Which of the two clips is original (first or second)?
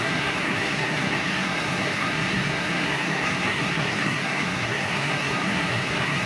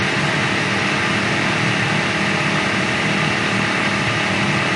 second